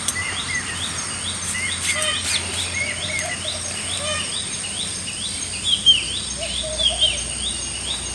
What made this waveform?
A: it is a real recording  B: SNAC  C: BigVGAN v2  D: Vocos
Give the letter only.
A